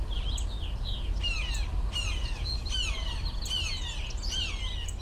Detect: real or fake real